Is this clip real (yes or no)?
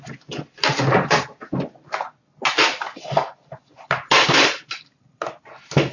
yes